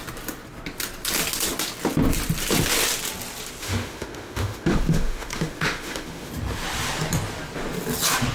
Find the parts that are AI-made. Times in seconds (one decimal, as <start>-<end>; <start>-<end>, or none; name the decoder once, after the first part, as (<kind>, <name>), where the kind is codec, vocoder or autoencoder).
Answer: 3.6-6.3 (autoencoder, DAC-VAE)